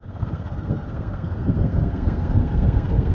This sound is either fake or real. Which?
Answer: fake